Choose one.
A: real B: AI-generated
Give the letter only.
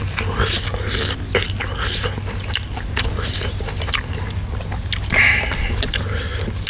A